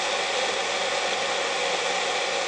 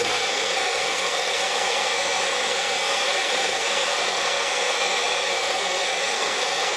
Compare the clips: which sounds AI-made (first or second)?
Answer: second